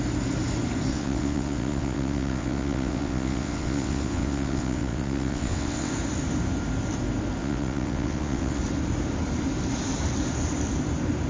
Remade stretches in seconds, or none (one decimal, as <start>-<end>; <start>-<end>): 0.9-5.9; 7.4-8.6

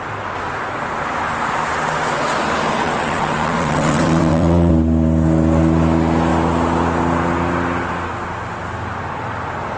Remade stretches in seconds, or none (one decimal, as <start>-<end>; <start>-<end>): 2.8-4.7